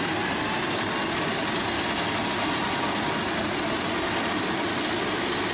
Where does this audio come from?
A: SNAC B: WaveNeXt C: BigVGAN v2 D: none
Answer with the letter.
D